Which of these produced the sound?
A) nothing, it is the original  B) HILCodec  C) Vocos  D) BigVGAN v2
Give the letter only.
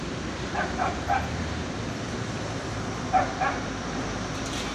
D